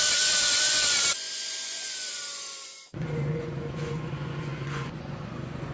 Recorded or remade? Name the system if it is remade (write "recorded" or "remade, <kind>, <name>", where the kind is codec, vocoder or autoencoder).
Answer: remade, vocoder, Vocos